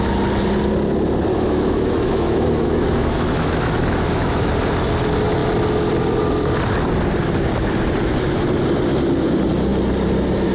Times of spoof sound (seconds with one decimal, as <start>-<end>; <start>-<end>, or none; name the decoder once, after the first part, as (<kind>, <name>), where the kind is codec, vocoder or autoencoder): 1.3-4.5 (autoencoder, DAC-VAE)